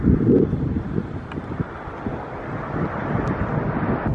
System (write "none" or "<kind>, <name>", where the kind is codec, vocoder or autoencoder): none